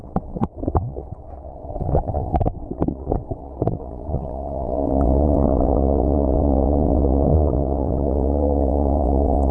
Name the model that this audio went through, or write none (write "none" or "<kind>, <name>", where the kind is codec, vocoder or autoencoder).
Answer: vocoder, WaveNeXt